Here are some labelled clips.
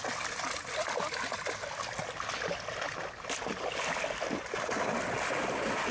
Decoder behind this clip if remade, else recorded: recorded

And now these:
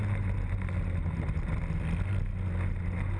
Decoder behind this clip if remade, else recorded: recorded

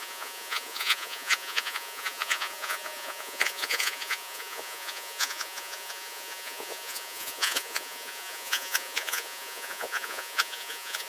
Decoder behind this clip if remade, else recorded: remade, vocoder, Vocos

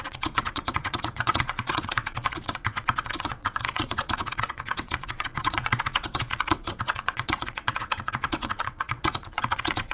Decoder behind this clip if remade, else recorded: remade, vocoder, WaveNeXt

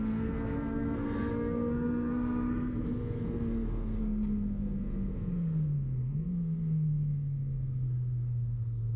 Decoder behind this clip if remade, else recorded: remade, codec, SNAC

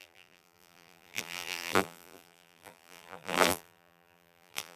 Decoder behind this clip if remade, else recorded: remade, vocoder, BigVGAN v2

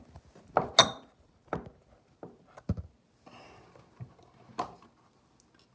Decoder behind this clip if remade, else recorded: recorded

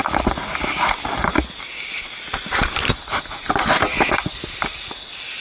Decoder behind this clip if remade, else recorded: recorded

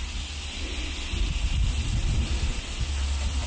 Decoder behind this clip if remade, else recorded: recorded